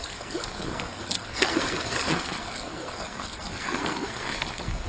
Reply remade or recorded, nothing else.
remade